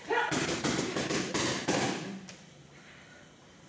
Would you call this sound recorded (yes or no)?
no